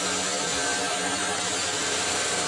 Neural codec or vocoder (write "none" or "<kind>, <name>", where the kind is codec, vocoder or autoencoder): none